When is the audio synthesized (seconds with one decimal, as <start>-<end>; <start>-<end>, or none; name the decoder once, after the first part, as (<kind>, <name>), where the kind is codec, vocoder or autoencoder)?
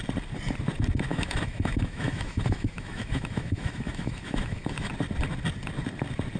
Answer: 1.1-4.9 (autoencoder, DAC-VAE)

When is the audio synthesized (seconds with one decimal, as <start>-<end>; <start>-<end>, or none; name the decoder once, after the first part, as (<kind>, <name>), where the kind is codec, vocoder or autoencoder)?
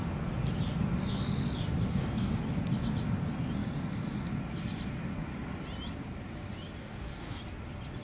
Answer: 1.9-2.4 (codec, DAC); 6.8-7.4